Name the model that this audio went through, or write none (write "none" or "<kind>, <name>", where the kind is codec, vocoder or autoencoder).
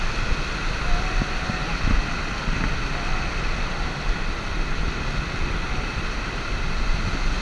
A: none